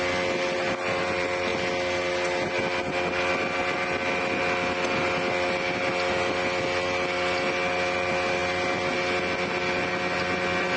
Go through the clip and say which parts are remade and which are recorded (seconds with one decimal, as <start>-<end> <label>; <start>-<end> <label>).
0.0-10.8 recorded